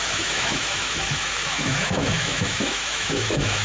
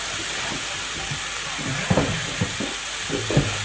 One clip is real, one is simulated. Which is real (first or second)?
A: second